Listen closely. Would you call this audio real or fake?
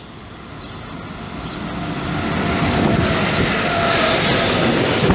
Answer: real